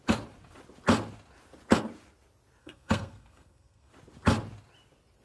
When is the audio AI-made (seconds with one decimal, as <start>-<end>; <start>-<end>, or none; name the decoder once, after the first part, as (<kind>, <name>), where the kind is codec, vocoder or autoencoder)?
2.6-3.9 (codec, SNAC)

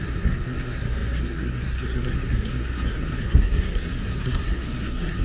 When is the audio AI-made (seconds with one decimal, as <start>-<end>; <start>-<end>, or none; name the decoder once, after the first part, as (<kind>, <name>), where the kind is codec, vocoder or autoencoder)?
0.0-5.2 (codec, SNAC)

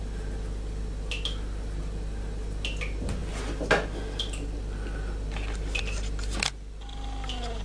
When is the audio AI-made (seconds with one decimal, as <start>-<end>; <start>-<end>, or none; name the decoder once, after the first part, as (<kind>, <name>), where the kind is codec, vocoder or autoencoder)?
none

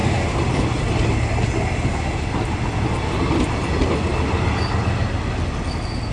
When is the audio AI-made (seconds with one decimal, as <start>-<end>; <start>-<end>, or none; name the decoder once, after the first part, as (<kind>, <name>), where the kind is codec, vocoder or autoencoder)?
none

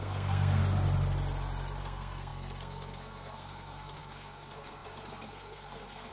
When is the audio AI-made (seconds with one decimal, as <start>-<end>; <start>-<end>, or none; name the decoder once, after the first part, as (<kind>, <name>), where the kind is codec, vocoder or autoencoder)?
0.0-0.6 (codec, SNAC); 1.8-6.1

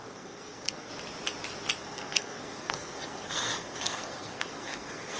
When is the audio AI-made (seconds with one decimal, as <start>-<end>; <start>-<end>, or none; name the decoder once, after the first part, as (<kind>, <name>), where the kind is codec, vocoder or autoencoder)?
0.0-0.9 (codec, SNAC); 1.8-5.2

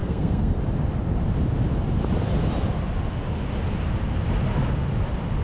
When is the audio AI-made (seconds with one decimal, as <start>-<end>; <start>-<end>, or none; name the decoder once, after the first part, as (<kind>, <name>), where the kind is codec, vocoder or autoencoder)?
0.0-0.6 (codec, SNAC)

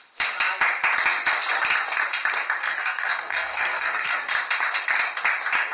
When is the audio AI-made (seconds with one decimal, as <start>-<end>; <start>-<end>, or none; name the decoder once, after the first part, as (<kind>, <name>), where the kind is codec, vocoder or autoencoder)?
2.6-4.3 (codec, SNAC)